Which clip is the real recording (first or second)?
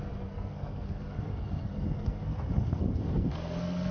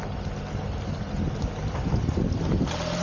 second